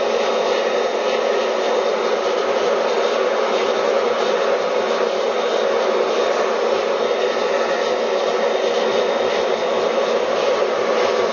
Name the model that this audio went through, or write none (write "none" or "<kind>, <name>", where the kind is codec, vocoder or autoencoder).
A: none